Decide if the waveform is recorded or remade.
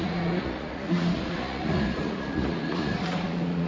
remade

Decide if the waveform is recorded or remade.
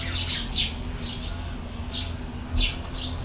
recorded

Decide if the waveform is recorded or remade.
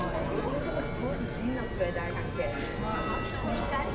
recorded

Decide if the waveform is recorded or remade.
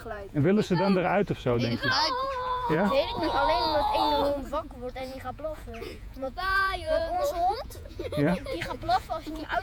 remade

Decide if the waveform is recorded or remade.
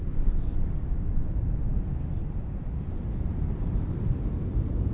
recorded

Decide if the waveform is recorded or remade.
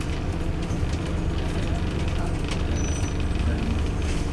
recorded